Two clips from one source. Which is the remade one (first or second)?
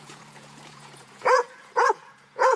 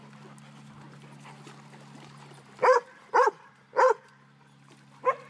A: first